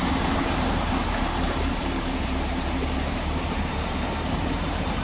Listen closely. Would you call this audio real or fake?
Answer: fake